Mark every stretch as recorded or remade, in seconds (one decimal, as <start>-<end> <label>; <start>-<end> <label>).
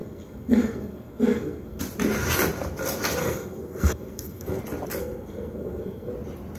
0.0-1.8 remade; 1.8-3.2 recorded; 3.2-4.6 remade; 4.6-5.0 recorded; 5.0-6.1 remade; 6.1-6.6 recorded